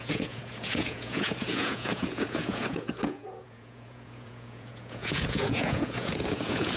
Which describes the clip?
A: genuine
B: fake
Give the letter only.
B